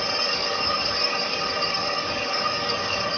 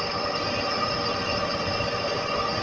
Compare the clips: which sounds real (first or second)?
second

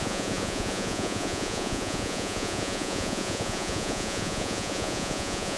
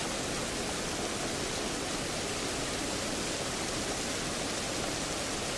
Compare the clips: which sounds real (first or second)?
second